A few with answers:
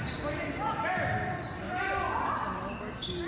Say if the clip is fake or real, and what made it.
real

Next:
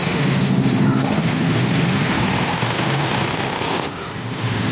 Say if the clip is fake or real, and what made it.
fake, autoencoder, DAC-VAE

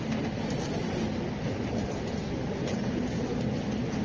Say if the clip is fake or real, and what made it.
real